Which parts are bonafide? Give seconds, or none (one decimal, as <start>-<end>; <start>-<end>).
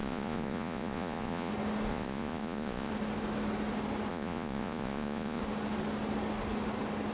1.5-1.9; 2.9-4.1; 5.4-7.1